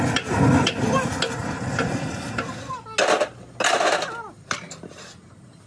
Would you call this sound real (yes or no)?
yes